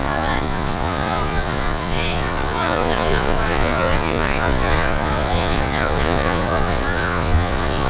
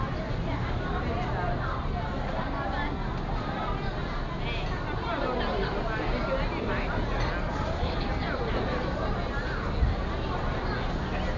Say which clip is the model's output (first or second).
first